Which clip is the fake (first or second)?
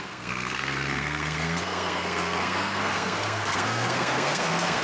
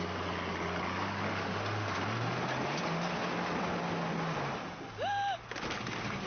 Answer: first